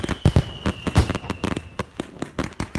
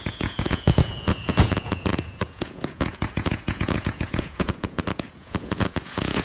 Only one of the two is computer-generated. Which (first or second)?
second